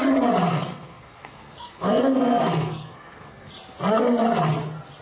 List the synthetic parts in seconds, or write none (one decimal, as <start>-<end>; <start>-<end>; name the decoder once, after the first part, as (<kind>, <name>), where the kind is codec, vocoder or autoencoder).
0.5-3.5 (codec, SNAC)